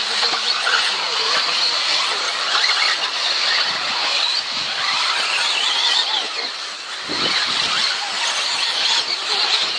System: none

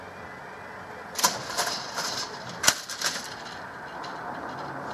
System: none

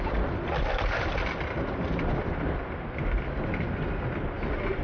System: none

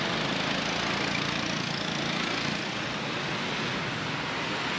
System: none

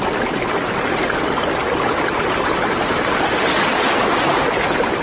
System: none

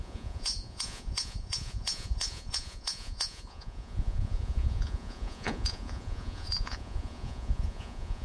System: vocoder, Vocos